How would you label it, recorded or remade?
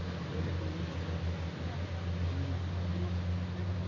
recorded